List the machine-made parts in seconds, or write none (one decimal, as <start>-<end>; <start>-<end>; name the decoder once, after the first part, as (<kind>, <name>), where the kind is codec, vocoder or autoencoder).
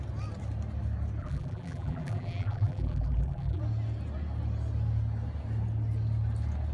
1.2-3.6 (vocoder, BigVGAN v2)